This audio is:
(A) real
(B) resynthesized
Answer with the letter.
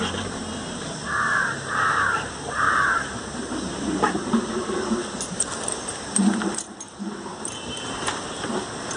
B